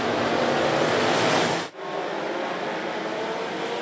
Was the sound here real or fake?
real